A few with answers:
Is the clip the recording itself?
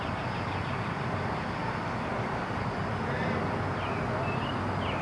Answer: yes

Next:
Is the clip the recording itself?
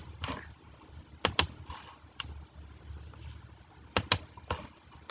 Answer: yes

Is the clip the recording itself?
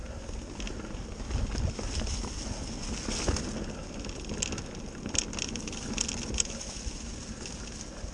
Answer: yes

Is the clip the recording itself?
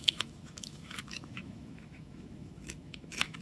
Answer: no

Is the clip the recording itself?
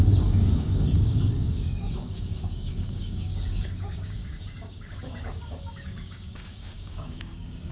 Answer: no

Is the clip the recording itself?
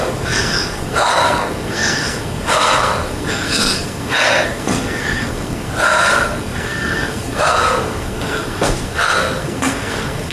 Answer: no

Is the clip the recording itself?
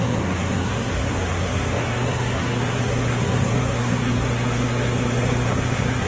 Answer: no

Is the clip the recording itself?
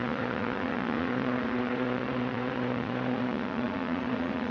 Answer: no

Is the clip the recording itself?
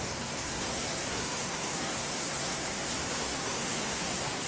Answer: no